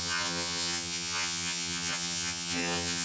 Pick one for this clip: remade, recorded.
remade